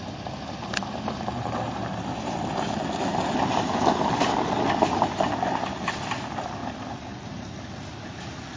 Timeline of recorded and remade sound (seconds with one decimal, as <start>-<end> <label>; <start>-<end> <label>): 0.0-8.6 recorded